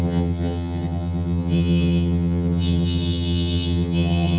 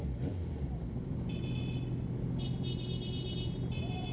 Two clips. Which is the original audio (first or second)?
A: second